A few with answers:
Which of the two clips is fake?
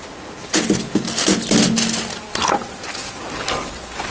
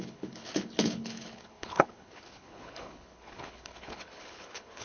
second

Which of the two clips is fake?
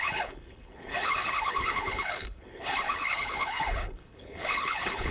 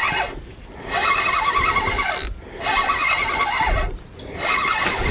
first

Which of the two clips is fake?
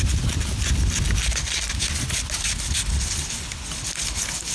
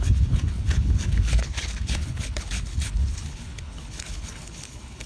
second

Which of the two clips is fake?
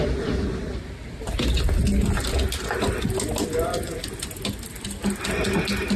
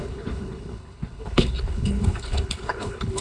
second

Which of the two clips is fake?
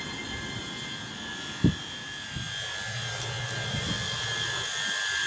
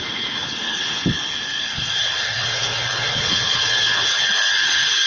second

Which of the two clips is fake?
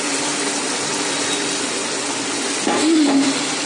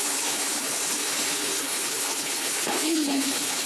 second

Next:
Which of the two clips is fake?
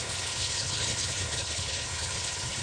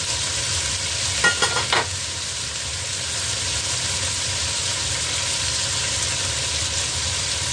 first